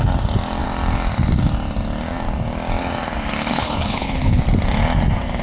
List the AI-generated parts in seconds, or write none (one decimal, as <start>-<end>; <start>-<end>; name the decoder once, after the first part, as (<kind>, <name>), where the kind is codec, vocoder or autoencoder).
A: 3.5-4.4 (codec, HILCodec)